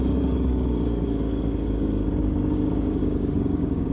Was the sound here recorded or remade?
remade